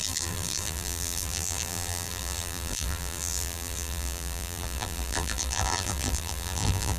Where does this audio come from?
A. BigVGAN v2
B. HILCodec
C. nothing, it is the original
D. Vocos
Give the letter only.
A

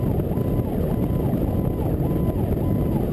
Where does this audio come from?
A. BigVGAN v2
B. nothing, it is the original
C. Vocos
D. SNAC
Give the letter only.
B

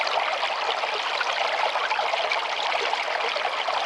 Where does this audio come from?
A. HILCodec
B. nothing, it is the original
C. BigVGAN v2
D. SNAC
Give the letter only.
B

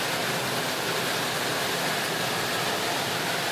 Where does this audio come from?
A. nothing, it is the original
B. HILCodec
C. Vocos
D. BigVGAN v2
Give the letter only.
D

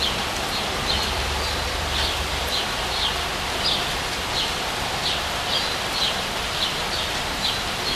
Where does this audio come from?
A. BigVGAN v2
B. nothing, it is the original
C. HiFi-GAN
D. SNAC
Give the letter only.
A